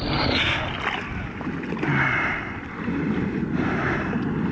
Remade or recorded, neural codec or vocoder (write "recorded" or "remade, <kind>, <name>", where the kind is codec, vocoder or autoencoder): recorded